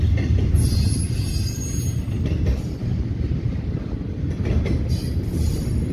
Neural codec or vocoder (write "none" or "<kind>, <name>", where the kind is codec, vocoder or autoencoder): none